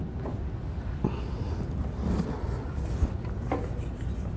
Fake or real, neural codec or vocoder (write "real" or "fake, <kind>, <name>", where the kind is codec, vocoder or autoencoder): real